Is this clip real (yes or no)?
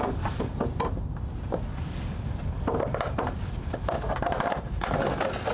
yes